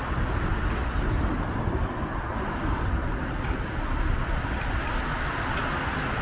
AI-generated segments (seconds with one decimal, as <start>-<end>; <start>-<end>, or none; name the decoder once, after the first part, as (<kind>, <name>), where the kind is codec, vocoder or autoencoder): none